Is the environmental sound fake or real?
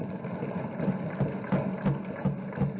real